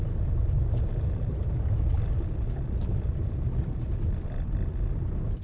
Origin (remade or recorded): recorded